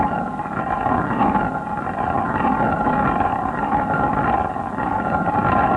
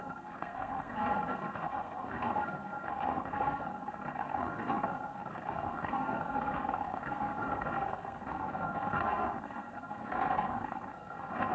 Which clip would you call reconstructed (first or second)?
second